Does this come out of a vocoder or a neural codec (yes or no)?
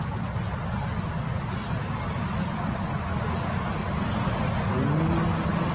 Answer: no